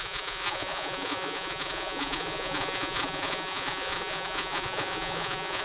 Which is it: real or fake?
fake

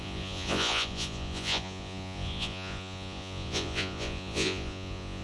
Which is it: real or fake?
fake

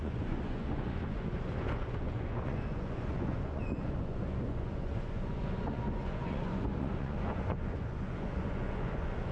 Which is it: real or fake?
fake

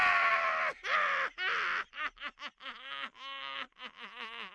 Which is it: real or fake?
real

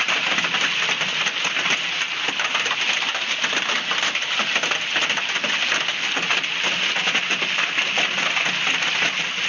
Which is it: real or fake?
real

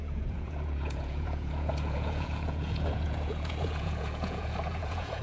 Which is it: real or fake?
fake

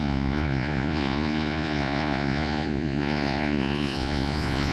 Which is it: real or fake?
fake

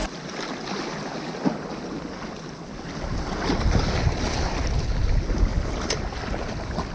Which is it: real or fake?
real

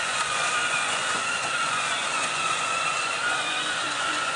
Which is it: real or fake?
fake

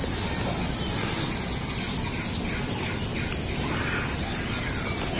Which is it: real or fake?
real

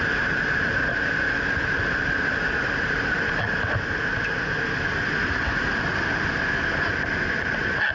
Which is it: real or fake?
real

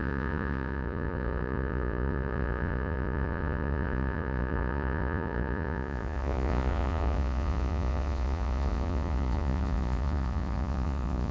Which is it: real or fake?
fake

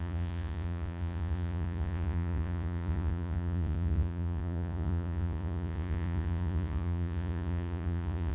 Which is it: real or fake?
fake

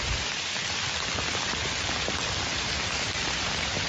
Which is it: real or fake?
real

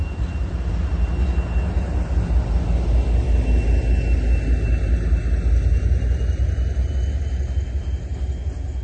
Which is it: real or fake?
real